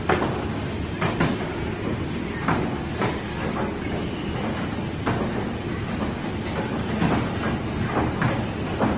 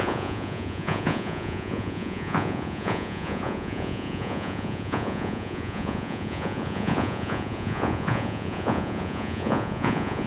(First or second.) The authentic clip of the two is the first